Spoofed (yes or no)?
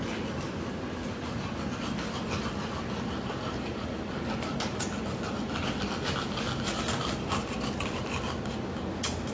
no